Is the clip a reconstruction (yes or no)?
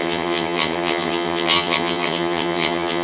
yes